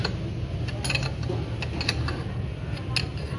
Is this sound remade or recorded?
recorded